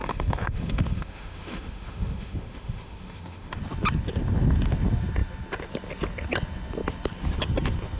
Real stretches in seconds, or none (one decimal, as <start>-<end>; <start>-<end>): 3.6-8.0